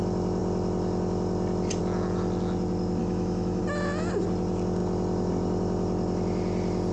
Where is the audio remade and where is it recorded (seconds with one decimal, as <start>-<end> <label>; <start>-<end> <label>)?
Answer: 0.0-3.0 recorded; 3.0-3.6 remade; 3.6-6.9 recorded